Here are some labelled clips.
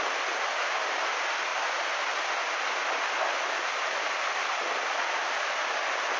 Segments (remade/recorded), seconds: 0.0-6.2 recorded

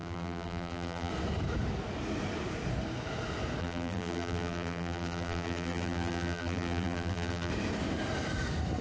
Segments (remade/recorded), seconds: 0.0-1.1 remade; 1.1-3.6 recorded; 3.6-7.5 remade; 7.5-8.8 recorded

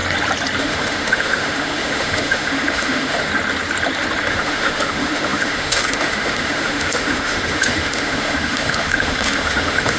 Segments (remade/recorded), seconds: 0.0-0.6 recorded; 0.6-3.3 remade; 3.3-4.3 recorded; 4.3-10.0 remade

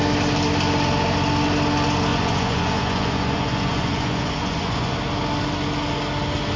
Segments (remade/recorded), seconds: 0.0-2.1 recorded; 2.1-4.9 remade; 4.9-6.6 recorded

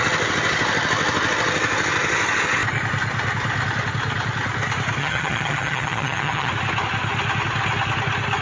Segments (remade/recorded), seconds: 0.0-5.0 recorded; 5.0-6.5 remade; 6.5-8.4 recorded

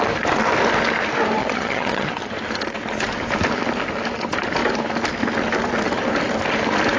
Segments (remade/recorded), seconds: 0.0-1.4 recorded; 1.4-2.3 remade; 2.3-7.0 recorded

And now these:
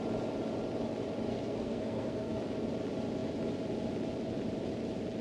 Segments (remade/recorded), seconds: 0.0-1.3 recorded; 1.3-2.4 remade; 2.4-5.2 recorded